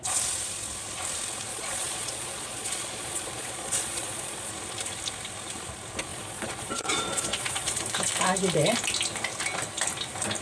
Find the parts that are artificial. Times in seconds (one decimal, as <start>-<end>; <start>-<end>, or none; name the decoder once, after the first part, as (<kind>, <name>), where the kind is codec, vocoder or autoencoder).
1.5-4.5 (vocoder, Vocos); 6.1-7.8